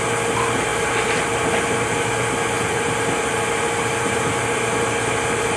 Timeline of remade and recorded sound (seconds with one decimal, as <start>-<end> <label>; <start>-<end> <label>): 0.0-5.6 recorded